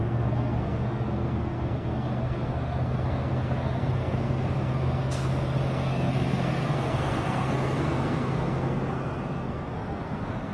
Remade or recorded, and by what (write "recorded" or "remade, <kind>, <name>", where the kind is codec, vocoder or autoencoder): remade, codec, SNAC